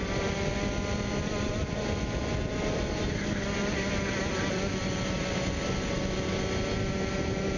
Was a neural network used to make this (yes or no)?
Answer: no